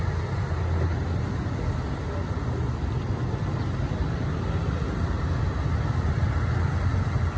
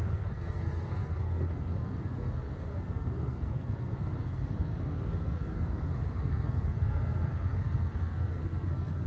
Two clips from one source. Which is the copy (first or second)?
second